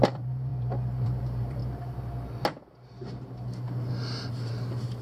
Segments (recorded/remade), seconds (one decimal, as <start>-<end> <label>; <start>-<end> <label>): 0.0-1.6 remade; 1.6-4.3 recorded; 4.3-5.0 remade